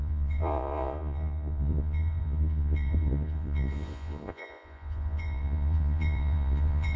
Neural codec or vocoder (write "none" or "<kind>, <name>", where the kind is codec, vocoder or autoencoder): vocoder, Vocos